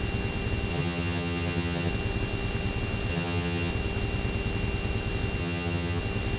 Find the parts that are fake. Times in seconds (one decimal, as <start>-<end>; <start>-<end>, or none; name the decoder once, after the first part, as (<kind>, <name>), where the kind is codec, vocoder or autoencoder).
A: 0.7-1.9 (vocoder, HiFi-GAN); 3.1-3.7; 5.4-6.0